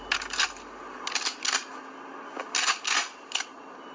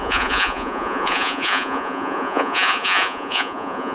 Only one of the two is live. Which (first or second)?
first